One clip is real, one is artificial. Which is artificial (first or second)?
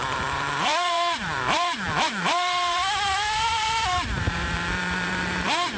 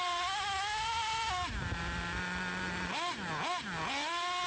first